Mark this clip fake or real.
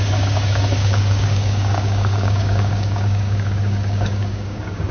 fake